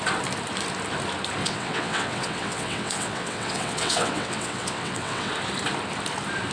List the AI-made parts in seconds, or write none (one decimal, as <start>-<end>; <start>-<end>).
1.4-5.3